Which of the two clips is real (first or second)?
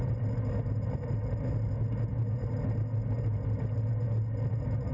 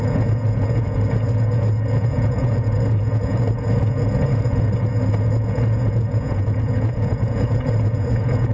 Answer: first